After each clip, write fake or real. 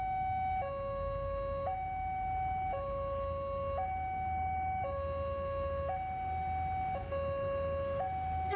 real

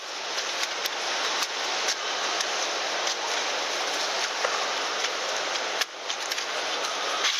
real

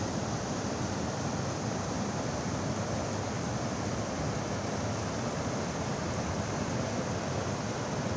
real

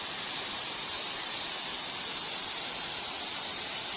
real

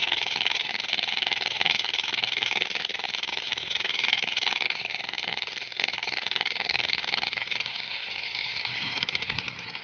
fake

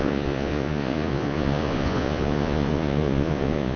fake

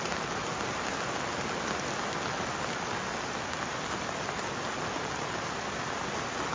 real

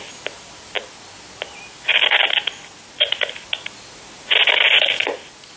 real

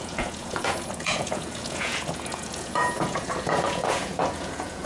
fake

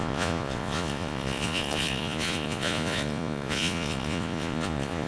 fake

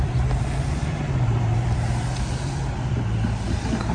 fake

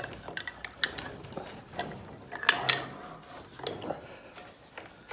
real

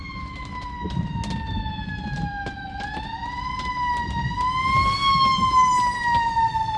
real